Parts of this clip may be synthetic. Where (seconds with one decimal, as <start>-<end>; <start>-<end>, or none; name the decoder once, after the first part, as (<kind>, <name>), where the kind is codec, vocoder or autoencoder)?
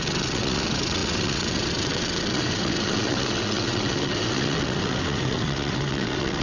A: 0.0-6.4 (vocoder, WaveNeXt)